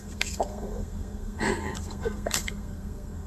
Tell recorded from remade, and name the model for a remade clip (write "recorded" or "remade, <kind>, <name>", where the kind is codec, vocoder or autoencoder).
remade, codec, SNAC